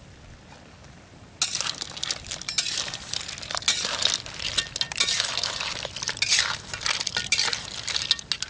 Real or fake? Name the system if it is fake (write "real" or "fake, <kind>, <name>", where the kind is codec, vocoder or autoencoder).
real